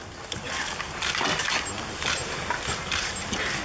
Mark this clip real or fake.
real